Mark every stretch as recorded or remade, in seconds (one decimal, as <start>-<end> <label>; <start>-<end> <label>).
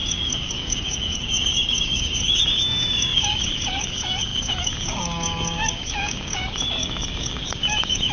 0.0-8.1 remade